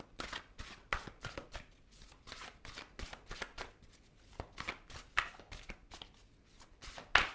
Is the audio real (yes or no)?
yes